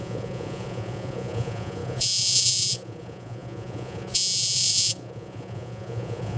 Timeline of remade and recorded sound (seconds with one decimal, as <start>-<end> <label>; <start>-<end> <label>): 0.0-6.4 remade